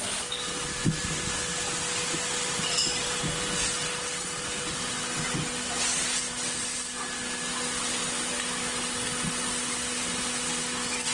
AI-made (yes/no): no